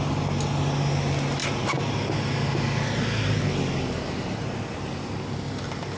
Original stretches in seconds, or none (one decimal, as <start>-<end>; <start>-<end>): 0.0-6.0

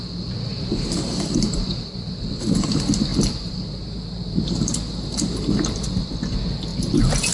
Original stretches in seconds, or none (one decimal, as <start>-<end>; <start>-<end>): 0.0-0.5; 2.2-3.1; 6.1-6.7

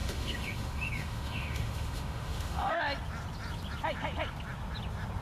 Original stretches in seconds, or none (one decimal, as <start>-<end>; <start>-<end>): 2.8-5.2

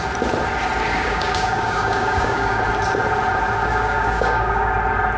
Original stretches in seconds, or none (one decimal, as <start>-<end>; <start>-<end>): 0.0-0.9; 2.6-3.7; 4.7-5.2

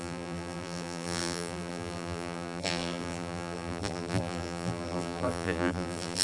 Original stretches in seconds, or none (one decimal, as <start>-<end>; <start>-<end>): none

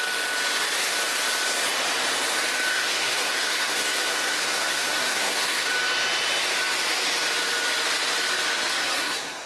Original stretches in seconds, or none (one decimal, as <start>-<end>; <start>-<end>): 0.0-2.7; 5.7-8.7

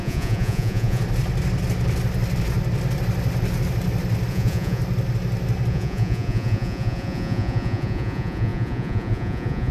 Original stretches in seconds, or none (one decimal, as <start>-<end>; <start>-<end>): 1.0-4.3; 4.8-5.7